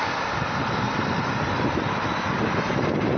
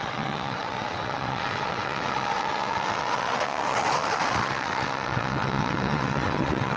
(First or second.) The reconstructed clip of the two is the second